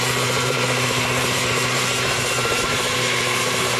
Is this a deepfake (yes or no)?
yes